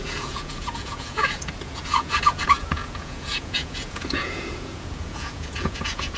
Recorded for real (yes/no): no